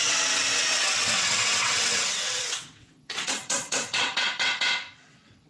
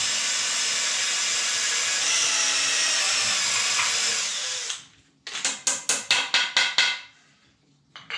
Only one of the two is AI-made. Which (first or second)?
first